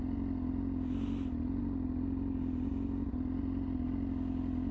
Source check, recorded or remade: recorded